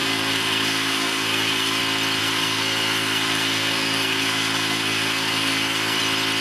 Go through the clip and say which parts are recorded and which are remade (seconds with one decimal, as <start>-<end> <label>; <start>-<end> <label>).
0.0-1.8 remade; 1.8-2.2 recorded; 2.2-6.0 remade; 6.0-6.4 recorded

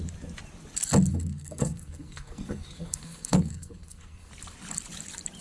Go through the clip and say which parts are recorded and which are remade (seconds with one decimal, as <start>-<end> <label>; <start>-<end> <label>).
0.0-1.1 recorded; 1.1-4.3 remade; 4.3-5.4 recorded